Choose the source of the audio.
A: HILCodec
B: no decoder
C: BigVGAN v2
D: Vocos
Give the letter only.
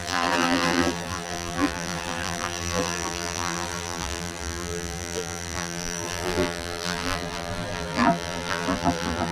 C